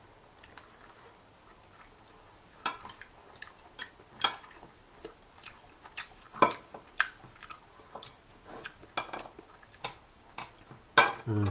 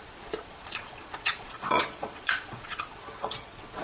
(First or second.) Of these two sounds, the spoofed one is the second